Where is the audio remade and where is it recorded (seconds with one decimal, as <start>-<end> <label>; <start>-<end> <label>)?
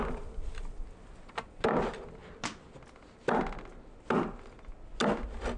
0.0-5.6 recorded